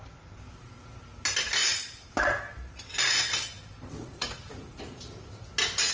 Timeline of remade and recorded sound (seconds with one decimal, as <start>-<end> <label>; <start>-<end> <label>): 0.0-4.0 recorded; 4.0-5.0 remade; 5.0-5.9 recorded